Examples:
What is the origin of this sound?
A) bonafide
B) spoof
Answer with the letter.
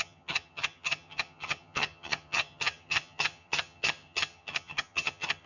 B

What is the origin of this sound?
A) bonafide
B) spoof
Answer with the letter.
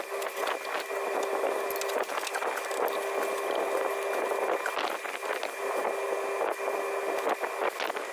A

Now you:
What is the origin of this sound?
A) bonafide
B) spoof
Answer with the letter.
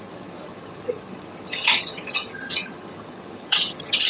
B